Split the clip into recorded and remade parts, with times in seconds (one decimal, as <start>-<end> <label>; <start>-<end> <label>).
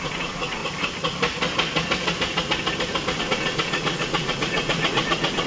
0.0-0.6 remade; 0.6-3.2 recorded; 3.2-5.5 remade